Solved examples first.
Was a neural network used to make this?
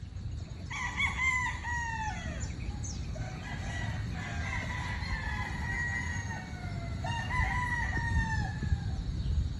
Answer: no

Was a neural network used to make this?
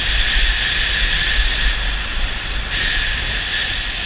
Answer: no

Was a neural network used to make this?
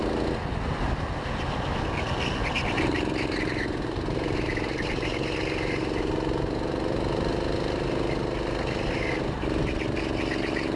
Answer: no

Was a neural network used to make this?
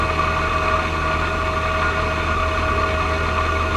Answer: no